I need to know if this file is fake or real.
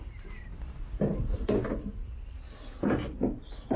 real